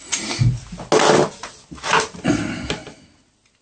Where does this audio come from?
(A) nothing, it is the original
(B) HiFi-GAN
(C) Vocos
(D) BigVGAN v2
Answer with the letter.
A